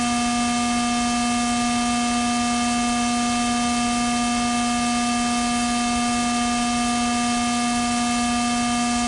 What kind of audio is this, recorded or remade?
recorded